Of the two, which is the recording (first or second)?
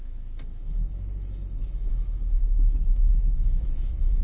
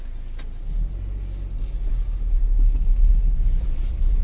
second